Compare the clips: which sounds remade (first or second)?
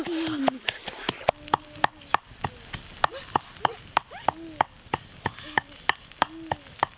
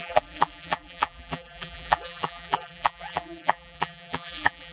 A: second